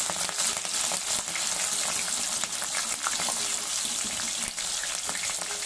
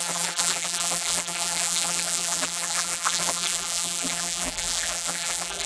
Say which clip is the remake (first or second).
second